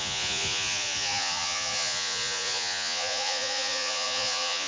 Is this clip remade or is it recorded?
remade